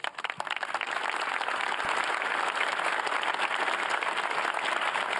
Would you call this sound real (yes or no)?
yes